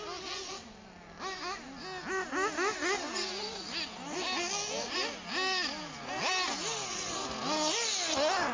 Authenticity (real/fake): real